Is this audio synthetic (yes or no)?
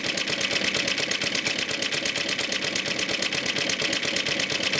no